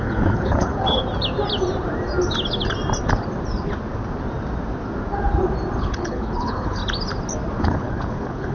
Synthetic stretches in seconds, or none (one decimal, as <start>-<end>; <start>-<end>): 0.0-1.0; 5.8-6.8; 7.6-8.5